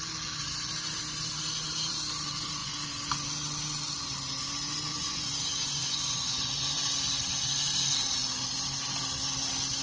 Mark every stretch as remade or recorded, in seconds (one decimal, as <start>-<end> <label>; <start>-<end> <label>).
0.0-4.9 recorded; 4.9-6.8 remade; 6.8-9.8 recorded